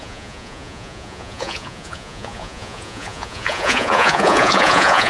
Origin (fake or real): fake